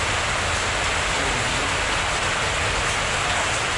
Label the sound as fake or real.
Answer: real